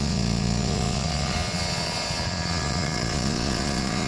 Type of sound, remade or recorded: remade